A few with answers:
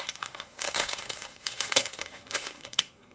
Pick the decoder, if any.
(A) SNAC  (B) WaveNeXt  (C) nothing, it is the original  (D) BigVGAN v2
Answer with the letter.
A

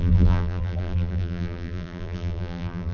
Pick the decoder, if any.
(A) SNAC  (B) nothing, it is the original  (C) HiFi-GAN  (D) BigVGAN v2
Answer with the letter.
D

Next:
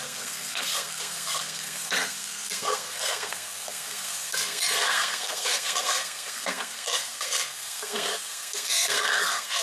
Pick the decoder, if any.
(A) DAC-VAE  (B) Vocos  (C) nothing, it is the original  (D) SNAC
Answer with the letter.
D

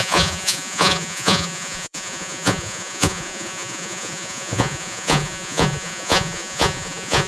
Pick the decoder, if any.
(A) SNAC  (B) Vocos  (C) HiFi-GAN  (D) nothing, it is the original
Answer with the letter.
B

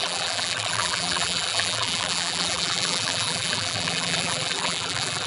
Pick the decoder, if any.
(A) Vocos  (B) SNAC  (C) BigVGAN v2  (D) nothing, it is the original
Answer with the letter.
C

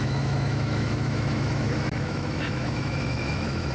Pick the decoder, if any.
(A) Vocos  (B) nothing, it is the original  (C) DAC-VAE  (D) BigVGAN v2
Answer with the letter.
C